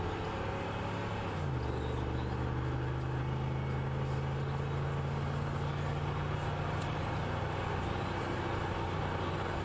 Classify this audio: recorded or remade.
recorded